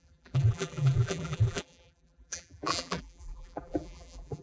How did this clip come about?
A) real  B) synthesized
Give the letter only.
B